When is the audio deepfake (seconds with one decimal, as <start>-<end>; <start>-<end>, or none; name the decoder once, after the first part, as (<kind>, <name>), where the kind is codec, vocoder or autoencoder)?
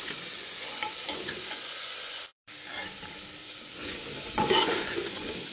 0.0-2.4 (vocoder, Vocos); 3.4-5.5